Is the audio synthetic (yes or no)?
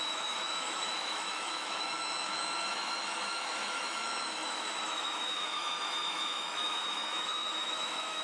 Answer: yes